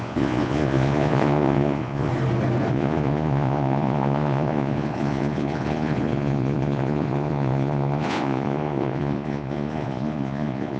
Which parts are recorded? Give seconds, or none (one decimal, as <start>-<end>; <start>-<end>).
2.1-2.7

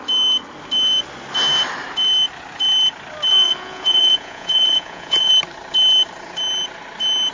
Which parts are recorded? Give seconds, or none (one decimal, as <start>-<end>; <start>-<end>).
0.0-3.3; 5.3-7.3

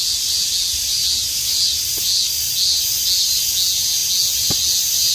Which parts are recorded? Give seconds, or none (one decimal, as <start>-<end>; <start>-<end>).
0.0-5.1

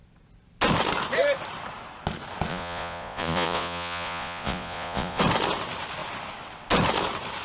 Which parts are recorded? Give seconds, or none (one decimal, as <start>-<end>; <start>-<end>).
0.0-2.5; 5.2-7.4

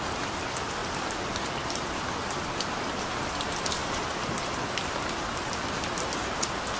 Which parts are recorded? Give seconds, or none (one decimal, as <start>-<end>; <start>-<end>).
0.0-6.8